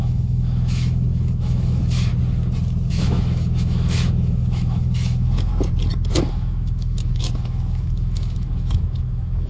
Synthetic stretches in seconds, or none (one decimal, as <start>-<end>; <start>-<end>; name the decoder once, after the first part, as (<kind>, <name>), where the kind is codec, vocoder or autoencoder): 0.0-2.1 (autoencoder, DAC-VAE); 2.9-5.5; 6.3-9.5